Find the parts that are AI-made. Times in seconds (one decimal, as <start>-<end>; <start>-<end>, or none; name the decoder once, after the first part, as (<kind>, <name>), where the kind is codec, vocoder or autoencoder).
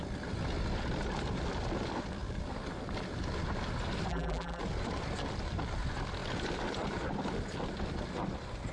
4.1-4.6 (vocoder, BigVGAN v2)